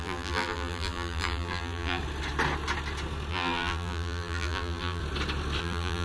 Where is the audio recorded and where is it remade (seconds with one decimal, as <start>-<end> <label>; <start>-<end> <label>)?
0.0-2.0 remade; 2.0-3.3 recorded; 3.3-5.0 remade; 5.0-5.6 recorded; 5.6-6.0 remade